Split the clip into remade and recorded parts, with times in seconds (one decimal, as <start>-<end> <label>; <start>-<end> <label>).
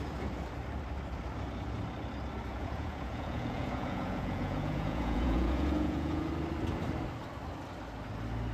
0.0-2.5 recorded; 2.5-6.3 remade; 6.3-8.5 recorded